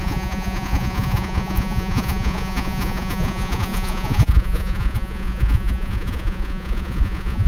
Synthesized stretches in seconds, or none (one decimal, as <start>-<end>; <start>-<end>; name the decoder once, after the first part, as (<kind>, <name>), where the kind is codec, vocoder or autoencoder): 0.0-7.5 (vocoder, Vocos)